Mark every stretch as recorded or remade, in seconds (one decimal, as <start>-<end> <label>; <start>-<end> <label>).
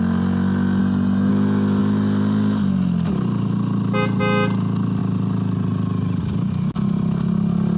0.0-0.8 recorded; 0.8-1.3 remade; 1.3-7.8 recorded